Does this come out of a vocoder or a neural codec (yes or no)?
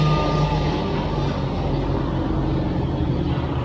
no